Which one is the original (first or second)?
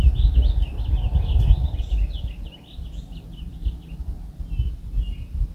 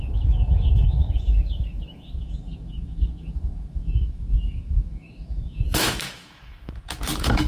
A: first